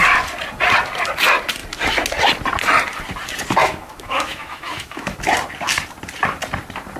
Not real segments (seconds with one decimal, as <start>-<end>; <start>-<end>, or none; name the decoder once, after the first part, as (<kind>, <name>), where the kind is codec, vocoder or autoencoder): 3.6-5.2 (autoencoder, DAC-VAE)